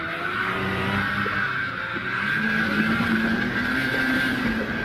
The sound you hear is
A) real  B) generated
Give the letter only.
B